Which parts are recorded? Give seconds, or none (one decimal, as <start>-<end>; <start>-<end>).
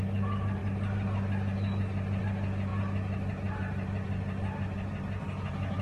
0.0-5.8